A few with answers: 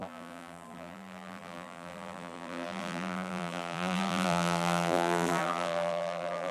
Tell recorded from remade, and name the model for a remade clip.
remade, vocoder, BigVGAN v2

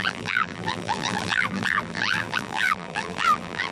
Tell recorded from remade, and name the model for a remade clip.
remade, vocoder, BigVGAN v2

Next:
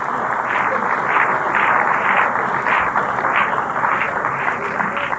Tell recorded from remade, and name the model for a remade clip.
recorded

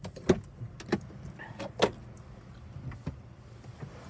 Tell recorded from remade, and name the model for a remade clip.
recorded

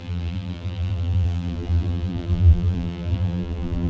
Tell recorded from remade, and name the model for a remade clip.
remade, vocoder, BigVGAN v2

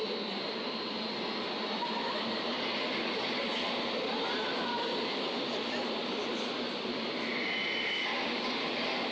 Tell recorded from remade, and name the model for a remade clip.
remade, vocoder, BigVGAN v2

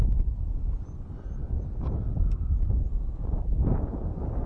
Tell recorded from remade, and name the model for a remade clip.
recorded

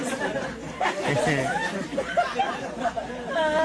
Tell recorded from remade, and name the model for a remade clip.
recorded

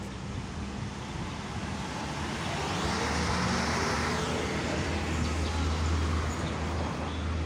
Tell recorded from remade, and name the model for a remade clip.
recorded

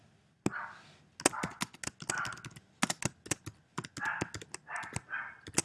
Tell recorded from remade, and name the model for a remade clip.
recorded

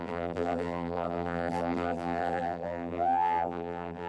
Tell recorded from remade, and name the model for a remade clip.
remade, vocoder, BigVGAN v2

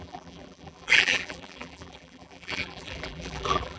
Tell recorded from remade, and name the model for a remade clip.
remade, vocoder, BigVGAN v2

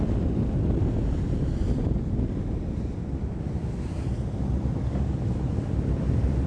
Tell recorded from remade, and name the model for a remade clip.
recorded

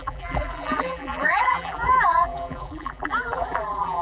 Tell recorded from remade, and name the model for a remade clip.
remade, vocoder, BigVGAN v2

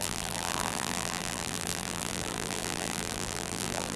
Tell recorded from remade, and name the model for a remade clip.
remade, vocoder, BigVGAN v2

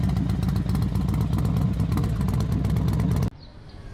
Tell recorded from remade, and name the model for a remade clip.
recorded